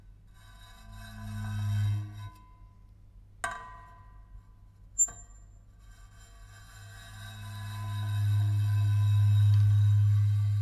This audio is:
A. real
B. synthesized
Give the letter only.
A